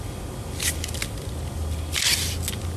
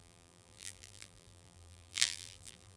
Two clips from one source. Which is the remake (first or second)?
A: second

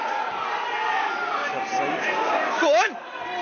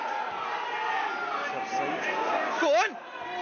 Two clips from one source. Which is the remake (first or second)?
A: first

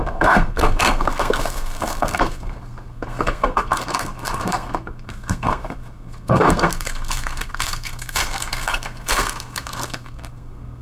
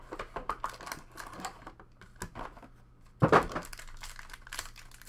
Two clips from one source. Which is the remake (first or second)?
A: first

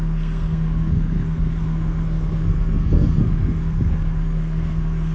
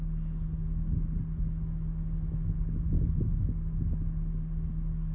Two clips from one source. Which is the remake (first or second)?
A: first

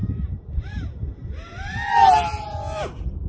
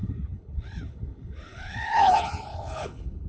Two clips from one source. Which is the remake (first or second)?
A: second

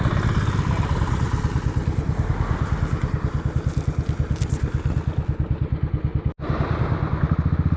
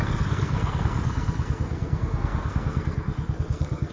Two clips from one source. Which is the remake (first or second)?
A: second